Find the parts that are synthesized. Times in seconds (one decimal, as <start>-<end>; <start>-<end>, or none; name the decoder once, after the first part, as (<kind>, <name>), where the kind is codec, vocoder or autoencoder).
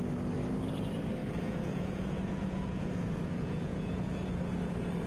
1.2-4.3 (vocoder, Vocos)